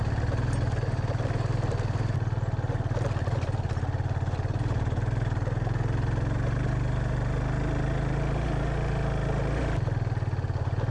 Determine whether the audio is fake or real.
real